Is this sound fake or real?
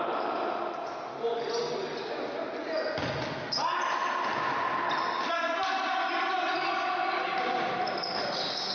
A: real